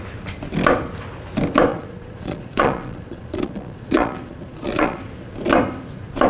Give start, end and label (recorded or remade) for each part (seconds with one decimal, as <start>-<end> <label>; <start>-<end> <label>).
0.0-1.7 recorded; 1.7-5.0 remade; 5.0-6.3 recorded